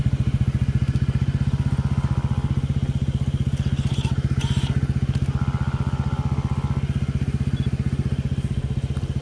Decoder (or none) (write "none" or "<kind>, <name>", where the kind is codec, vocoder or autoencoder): none